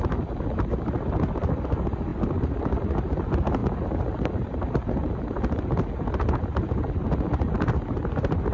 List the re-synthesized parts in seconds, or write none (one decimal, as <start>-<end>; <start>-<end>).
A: none